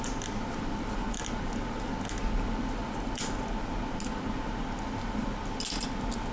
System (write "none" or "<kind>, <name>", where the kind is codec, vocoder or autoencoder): none